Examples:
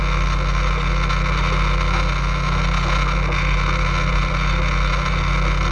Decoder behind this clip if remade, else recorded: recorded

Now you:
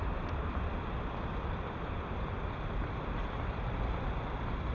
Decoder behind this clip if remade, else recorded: remade, vocoder, BigVGAN v2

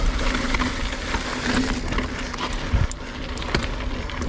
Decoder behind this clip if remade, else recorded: recorded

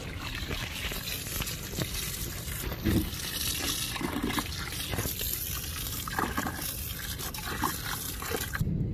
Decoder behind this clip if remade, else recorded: recorded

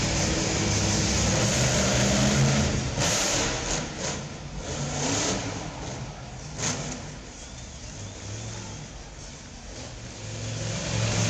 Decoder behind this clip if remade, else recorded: recorded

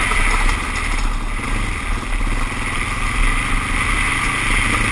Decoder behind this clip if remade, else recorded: recorded